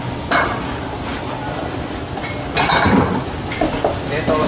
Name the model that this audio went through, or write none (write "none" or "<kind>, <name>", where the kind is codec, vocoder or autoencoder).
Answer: none